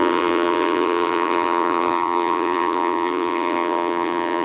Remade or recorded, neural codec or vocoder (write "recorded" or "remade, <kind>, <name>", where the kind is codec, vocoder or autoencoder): remade, vocoder, BigVGAN v2